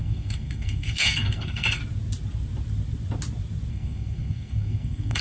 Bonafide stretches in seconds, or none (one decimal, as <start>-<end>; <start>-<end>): 1.8-3.7